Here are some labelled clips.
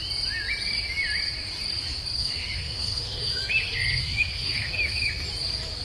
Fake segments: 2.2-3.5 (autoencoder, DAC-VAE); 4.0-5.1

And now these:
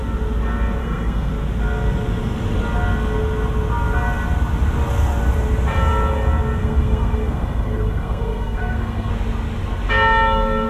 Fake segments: 0.8-1.3 (codec, SNAC); 6.6-9.1